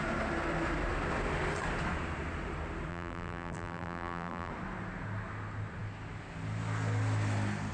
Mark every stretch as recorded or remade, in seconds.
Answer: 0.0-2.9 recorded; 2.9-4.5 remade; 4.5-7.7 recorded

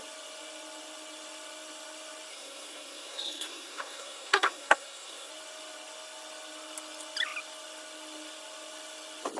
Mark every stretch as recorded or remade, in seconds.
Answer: 0.0-2.3 recorded; 2.3-5.3 remade; 5.3-9.4 recorded

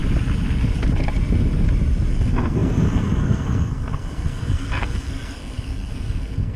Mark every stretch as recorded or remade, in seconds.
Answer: 0.0-2.1 recorded; 2.1-6.6 remade

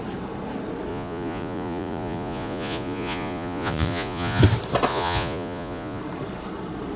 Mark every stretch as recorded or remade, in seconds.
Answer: 0.0-0.9 recorded; 0.9-4.4 remade; 4.4-4.9 recorded; 4.9-6.0 remade; 6.0-7.0 recorded